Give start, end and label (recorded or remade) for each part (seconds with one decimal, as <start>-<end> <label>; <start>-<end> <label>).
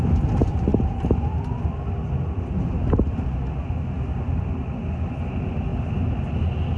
0.0-6.8 recorded